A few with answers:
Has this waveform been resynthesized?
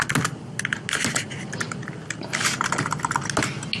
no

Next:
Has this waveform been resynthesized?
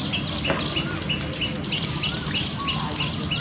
no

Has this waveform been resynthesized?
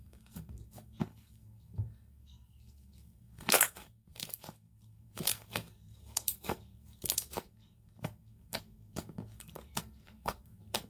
yes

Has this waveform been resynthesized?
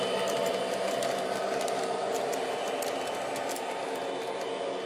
no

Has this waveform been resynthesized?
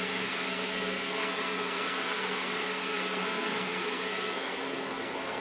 yes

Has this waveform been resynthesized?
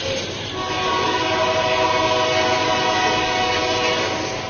no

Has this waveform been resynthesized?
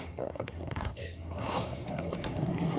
yes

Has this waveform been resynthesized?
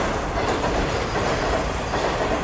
no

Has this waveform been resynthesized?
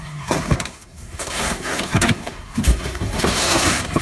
yes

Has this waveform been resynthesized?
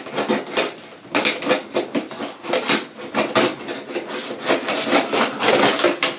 no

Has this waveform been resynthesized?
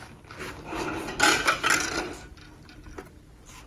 no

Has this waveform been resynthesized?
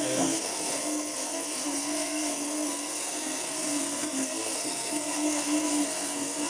yes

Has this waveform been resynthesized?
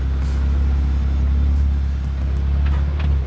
no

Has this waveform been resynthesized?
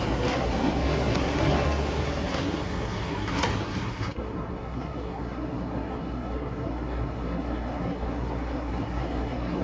yes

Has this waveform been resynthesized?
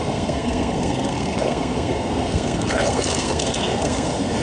yes